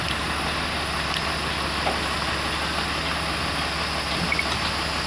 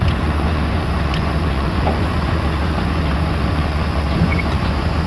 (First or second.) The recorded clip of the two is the first